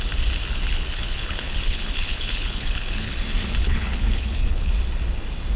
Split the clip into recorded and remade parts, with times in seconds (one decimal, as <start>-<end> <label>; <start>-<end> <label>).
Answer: 0.0-0.4 recorded; 0.4-3.2 remade; 3.2-3.6 recorded; 3.6-4.7 remade; 4.7-5.6 recorded